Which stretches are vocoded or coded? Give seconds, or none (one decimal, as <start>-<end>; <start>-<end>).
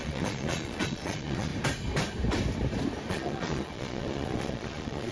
0.0-1.5; 3.1-5.1